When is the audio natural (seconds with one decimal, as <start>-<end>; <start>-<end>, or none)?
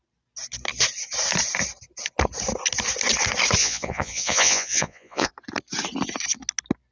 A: 0.0-3.6; 5.3-6.9